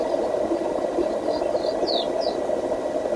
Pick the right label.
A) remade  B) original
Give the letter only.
B